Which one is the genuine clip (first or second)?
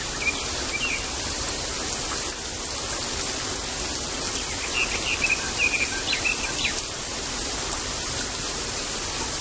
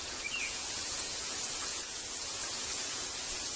first